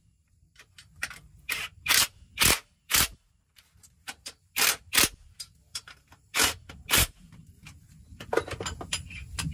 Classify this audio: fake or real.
fake